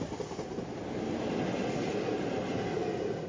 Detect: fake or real real